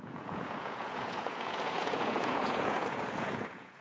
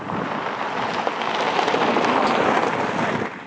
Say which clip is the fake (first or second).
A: first